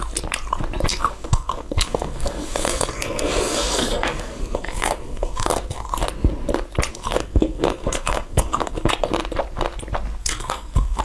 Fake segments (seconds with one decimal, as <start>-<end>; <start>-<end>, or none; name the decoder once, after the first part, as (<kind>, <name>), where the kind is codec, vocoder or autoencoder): 0.9-5.9 (codec, SNAC); 6.9-8.9; 10.2-11.0